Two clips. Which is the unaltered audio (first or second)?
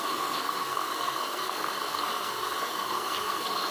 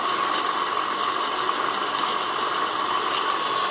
second